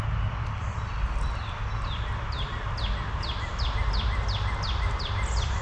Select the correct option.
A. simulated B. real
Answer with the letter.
B